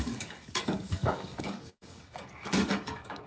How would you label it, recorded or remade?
remade